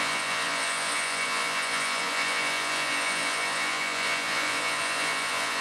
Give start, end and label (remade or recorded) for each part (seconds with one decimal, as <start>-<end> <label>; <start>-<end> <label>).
0.0-5.6 remade